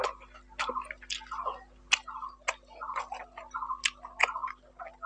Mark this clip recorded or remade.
recorded